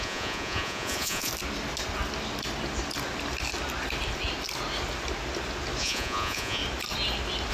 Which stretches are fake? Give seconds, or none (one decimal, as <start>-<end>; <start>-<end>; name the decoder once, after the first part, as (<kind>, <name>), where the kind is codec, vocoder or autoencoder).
0.0-1.3 (vocoder, Vocos); 5.8-6.6